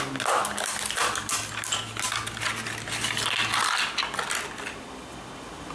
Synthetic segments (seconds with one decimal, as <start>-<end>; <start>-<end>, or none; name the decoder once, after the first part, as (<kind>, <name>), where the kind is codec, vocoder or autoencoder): none